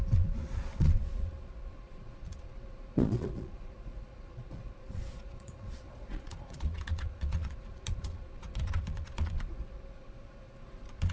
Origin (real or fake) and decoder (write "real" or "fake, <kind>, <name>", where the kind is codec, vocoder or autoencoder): fake, vocoder, Vocos